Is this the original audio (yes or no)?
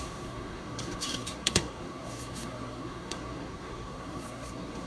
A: no